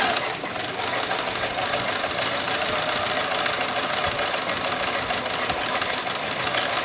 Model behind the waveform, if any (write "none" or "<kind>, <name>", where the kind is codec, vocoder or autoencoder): none